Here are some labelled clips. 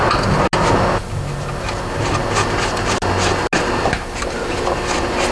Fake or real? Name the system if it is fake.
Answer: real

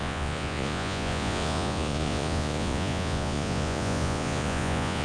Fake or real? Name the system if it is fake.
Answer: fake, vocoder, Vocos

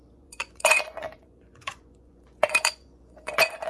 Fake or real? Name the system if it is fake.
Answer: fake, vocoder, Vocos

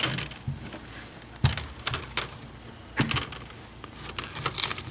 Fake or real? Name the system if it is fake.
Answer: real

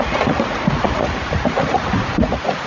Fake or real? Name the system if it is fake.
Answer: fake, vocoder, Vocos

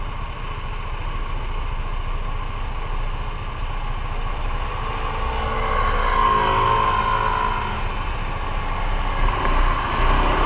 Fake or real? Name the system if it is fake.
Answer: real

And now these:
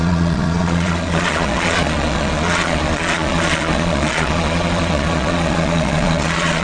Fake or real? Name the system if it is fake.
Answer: fake, vocoder, Vocos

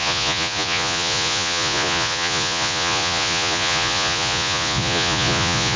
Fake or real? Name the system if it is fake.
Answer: fake, vocoder, Vocos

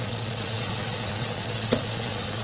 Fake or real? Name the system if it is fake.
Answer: fake, vocoder, Vocos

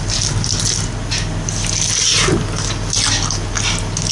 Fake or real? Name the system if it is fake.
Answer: real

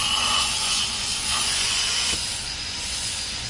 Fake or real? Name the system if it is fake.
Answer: fake, vocoder, Vocos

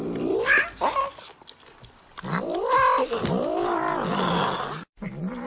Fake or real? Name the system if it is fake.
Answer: real